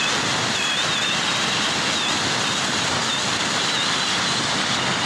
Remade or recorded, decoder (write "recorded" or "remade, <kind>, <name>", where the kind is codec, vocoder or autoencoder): recorded